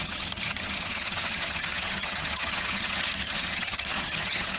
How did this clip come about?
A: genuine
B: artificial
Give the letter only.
B